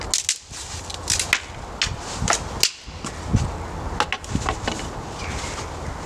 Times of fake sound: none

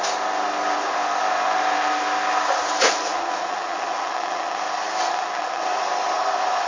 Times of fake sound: 3.1-4.6 (vocoder, WaveNeXt); 5.0-5.6